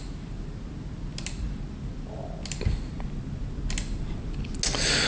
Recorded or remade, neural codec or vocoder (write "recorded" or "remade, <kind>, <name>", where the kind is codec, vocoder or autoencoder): recorded